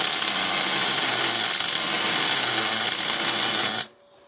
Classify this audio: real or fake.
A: real